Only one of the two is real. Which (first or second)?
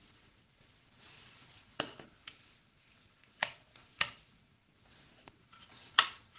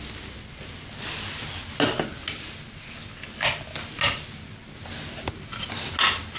second